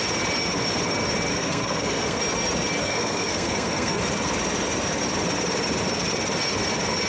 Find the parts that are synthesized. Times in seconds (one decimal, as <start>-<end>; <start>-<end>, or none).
1.3-2.2; 2.8-4.0